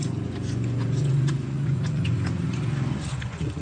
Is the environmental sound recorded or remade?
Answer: remade